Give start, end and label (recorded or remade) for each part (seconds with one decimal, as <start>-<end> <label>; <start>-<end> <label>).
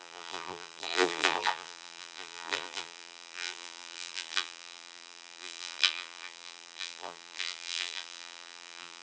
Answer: 0.0-9.0 remade